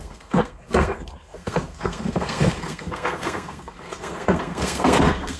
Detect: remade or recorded remade